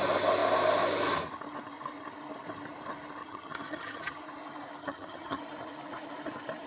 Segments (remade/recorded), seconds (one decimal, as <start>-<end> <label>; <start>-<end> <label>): 0.0-3.2 recorded; 3.2-4.2 remade; 4.2-4.8 recorded; 4.8-5.4 remade; 5.4-6.7 recorded